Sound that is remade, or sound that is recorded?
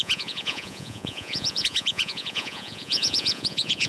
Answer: remade